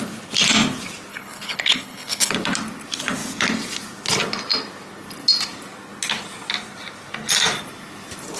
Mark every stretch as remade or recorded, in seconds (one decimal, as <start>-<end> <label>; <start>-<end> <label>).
0.0-1.1 recorded; 1.1-2.3 remade; 2.3-8.4 recorded